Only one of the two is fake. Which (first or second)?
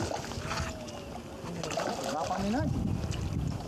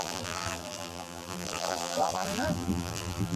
second